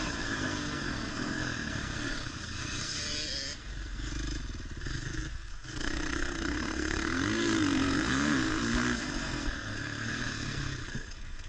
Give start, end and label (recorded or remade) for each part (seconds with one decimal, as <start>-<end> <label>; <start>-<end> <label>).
0.0-3.0 remade; 3.0-3.6 recorded; 3.6-4.1 remade; 4.1-4.8 recorded; 4.8-11.5 remade